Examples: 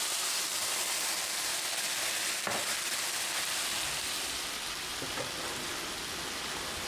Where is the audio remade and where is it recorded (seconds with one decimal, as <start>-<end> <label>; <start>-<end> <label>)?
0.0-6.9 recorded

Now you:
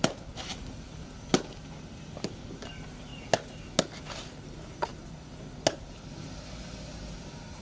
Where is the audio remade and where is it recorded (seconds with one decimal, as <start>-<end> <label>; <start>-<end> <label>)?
0.0-7.6 recorded

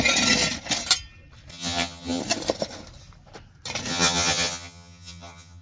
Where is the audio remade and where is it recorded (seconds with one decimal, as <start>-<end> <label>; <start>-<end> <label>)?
0.0-1.5 recorded; 1.5-2.2 remade; 2.2-3.9 recorded; 3.9-5.6 remade

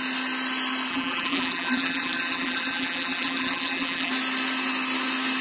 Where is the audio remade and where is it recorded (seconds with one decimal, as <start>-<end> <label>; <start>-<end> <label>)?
0.0-0.9 recorded; 0.9-4.1 remade; 4.1-5.4 recorded

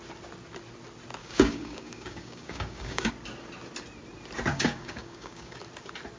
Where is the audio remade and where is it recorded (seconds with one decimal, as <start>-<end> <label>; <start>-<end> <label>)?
0.0-1.2 recorded; 1.2-3.1 remade; 3.1-4.5 recorded; 4.5-5.6 remade; 5.6-6.2 recorded

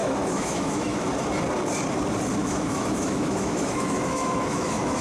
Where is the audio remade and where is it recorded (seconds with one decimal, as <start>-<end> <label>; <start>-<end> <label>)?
0.0-1.1 remade; 1.1-2.4 recorded; 2.4-5.0 remade